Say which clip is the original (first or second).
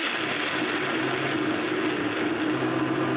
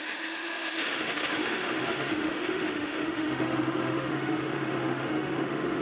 first